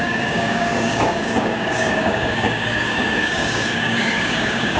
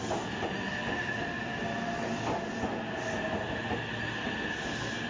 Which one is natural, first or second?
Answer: second